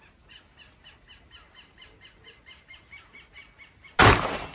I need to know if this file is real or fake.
real